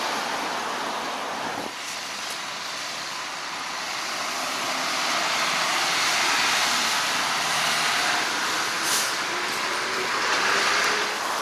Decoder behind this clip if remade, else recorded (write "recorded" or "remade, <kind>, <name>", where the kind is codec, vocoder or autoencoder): remade, vocoder, BigVGAN v2